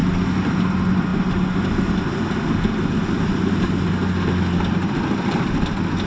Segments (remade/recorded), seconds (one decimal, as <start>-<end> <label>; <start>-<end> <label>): 0.0-6.1 recorded